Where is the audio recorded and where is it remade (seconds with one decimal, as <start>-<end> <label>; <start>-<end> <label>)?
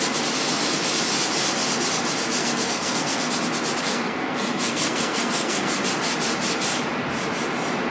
0.0-2.4 recorded; 2.4-3.3 remade; 3.3-3.8 recorded; 3.8-5.8 remade; 5.8-7.9 recorded